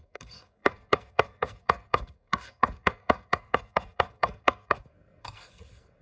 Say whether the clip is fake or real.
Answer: fake